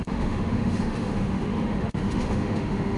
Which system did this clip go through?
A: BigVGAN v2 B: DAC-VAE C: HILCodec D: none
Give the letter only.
B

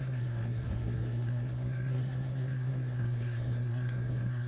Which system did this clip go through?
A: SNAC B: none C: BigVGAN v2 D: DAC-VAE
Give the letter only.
A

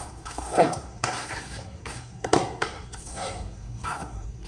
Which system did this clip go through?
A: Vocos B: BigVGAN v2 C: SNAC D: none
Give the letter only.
C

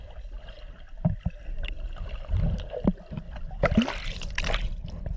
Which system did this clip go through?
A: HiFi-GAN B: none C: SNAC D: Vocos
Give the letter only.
B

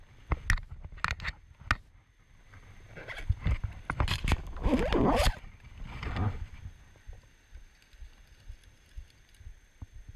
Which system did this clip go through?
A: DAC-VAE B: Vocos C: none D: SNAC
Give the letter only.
C